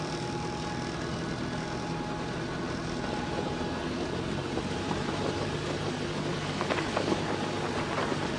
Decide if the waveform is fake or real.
real